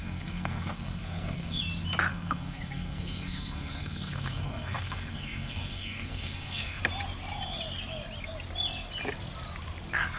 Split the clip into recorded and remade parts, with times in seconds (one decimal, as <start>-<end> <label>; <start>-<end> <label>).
0.0-1.6 remade; 1.6-2.1 recorded; 2.1-6.8 remade; 6.8-10.2 recorded